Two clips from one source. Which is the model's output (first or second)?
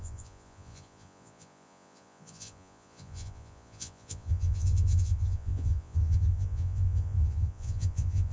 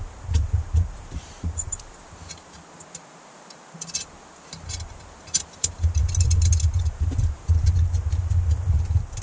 first